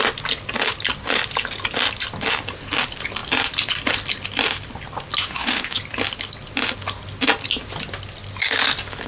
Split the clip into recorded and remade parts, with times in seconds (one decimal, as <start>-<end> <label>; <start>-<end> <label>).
0.0-5.2 recorded; 5.2-5.8 remade; 5.8-9.1 recorded